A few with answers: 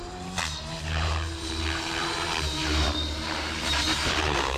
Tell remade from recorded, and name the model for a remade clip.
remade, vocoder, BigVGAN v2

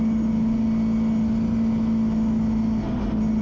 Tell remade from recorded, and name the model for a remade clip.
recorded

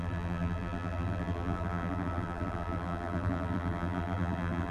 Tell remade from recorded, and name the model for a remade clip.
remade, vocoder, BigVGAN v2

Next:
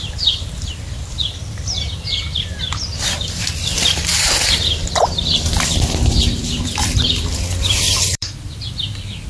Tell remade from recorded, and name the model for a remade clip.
remade, vocoder, BigVGAN v2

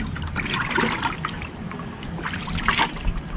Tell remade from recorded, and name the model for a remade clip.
recorded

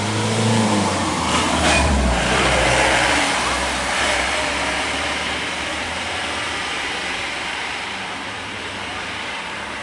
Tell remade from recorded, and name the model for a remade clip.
remade, vocoder, BigVGAN v2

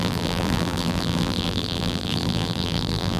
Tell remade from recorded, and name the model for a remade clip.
remade, vocoder, BigVGAN v2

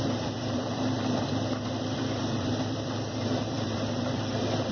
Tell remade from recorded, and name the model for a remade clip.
remade, vocoder, BigVGAN v2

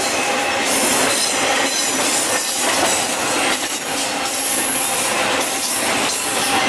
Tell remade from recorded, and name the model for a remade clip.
remade, vocoder, BigVGAN v2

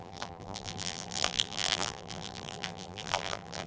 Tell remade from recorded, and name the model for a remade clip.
remade, vocoder, BigVGAN v2